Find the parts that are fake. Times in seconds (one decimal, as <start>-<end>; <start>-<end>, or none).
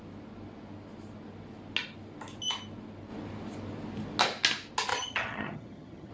4.9-6.1